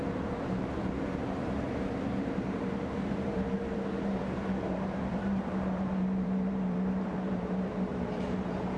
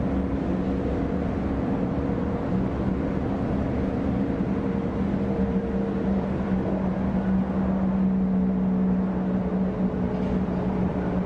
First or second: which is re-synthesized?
first